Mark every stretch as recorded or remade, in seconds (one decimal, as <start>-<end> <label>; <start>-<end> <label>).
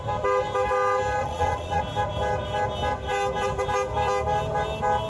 0.0-1.2 recorded; 1.2-1.8 remade; 1.8-5.1 recorded